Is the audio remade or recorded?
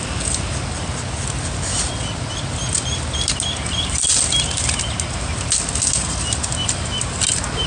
recorded